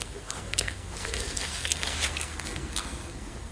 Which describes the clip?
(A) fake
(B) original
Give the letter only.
A